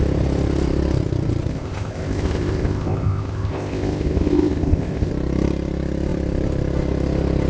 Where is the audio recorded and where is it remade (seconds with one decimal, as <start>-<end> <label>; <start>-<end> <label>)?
0.0-1.5 recorded; 1.5-5.1 remade; 5.1-7.5 recorded